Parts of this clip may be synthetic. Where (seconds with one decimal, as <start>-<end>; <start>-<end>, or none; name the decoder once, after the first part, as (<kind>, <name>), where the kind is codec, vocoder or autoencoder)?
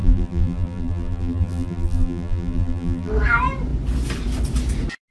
0.0-3.1 (vocoder, BigVGAN v2)